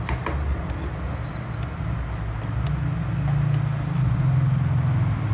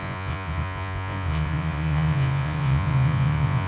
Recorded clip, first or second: first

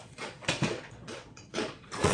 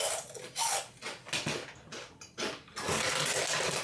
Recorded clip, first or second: second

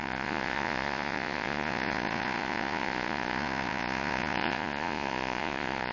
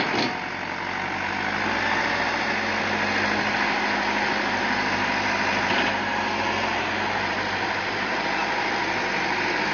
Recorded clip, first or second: second